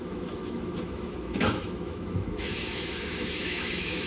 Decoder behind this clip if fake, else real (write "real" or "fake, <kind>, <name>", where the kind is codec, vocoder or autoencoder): fake, autoencoder, DAC-VAE